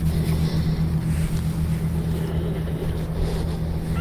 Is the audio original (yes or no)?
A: yes